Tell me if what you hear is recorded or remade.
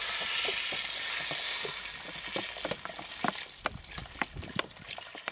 recorded